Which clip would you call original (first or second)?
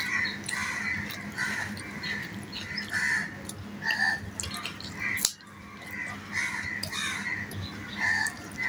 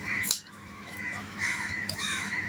first